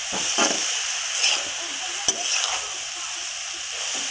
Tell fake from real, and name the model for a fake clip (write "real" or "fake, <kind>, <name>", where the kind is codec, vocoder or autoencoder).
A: real